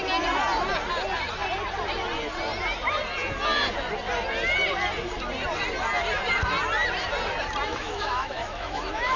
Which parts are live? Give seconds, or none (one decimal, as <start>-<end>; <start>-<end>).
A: 0.0-7.7